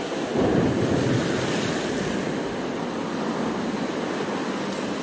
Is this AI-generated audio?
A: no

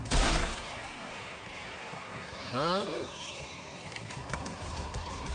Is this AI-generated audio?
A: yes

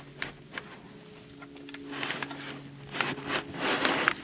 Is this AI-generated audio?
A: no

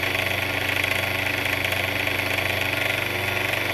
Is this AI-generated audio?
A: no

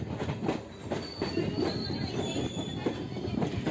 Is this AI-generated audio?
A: no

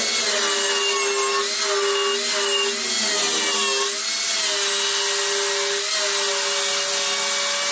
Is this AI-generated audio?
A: no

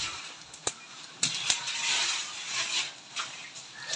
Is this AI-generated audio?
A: no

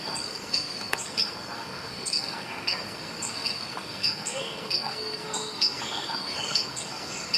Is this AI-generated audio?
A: yes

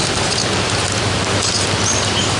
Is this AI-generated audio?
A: no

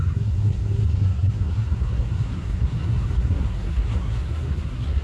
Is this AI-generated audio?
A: yes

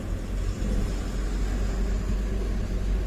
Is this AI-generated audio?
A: no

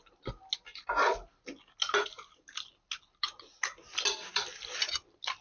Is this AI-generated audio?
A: no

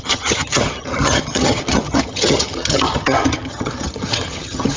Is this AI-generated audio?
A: yes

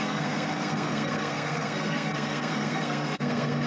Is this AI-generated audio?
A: yes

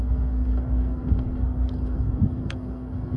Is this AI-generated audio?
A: yes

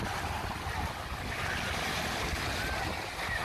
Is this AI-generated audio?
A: no